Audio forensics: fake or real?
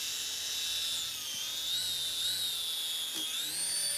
real